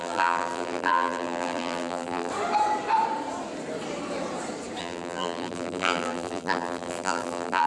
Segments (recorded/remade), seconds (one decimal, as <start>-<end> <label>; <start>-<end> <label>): 0.0-2.3 remade; 2.3-4.8 recorded; 4.8-7.7 remade